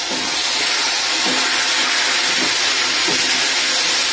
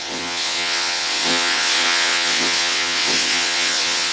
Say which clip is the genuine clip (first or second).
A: first